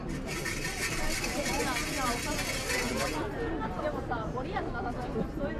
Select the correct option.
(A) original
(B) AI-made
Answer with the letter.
A